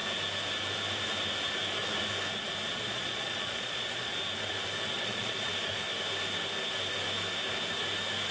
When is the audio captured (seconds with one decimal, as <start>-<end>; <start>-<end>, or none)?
0.0-2.7; 4.1-4.9; 5.5-8.3